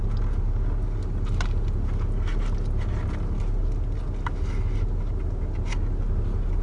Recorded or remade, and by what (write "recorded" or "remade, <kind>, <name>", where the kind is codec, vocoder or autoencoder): recorded